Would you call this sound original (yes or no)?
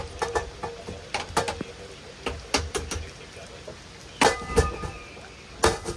yes